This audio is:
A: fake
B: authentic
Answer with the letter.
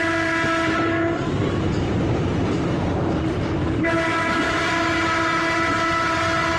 A